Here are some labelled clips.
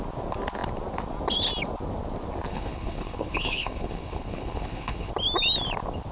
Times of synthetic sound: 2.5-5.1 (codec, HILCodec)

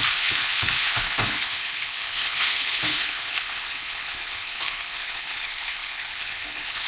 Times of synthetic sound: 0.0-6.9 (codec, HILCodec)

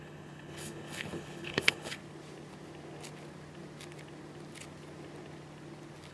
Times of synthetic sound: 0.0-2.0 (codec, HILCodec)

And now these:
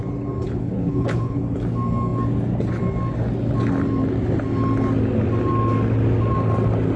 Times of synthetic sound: 0.6-1.4 (codec, HILCodec)

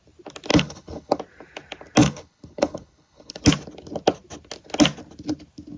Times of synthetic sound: 0.5-1.2 (codec, HILCodec); 2.0-3.4

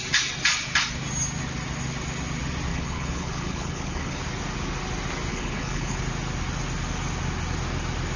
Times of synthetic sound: 2.7-4.2 (codec, HILCodec); 5.3-6.0

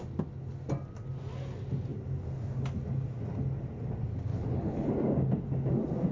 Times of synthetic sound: 4.3-4.9 (codec, HILCodec)